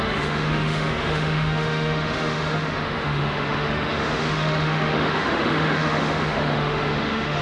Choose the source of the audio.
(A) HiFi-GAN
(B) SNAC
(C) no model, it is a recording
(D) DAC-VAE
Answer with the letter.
D